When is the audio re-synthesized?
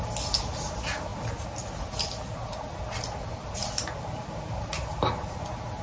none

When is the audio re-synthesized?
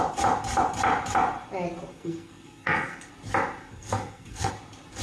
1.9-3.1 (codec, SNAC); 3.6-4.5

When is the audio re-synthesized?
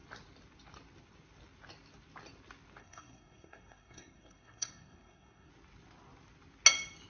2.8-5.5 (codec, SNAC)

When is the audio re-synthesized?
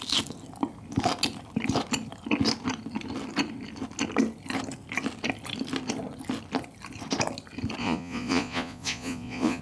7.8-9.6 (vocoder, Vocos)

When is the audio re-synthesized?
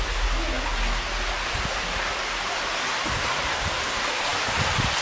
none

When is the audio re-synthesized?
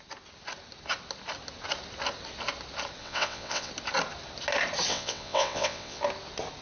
3.0-3.7 (vocoder, WaveNeXt); 4.9-6.0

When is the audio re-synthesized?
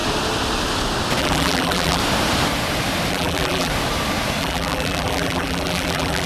1.2-2.0 (vocoder, BigVGAN v2); 3.1-3.7; 4.4-6.3